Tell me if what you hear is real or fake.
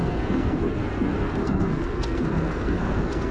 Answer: fake